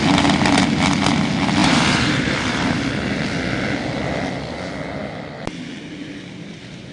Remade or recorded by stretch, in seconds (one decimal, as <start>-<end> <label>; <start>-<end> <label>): 0.0-1.6 recorded; 1.6-2.7 remade; 2.7-6.9 recorded